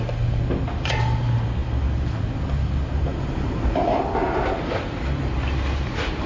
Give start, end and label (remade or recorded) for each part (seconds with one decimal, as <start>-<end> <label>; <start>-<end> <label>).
0.0-6.3 recorded